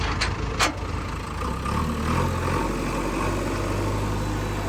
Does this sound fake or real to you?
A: real